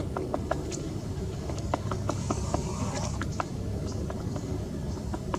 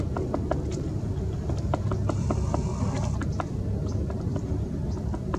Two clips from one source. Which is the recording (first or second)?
second